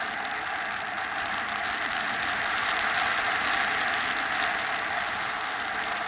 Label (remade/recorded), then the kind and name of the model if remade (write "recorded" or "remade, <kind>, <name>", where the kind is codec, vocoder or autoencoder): recorded